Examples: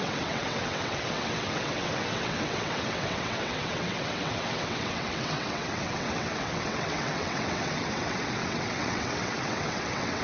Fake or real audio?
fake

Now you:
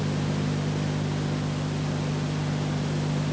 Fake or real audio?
real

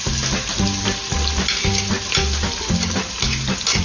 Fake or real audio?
real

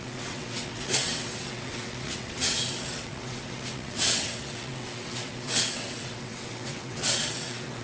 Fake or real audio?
fake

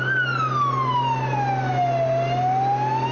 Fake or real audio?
real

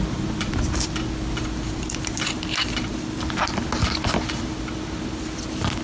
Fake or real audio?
real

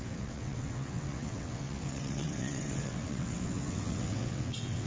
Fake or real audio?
fake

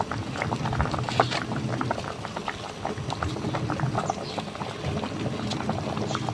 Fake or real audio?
real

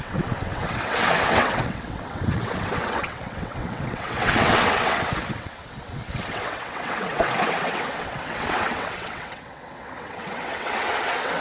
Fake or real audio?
fake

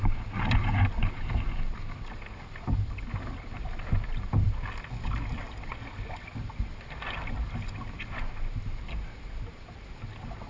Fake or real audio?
real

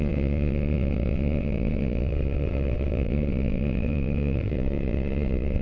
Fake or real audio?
fake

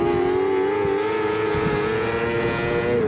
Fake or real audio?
real